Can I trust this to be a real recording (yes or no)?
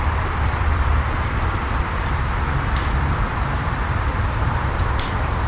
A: no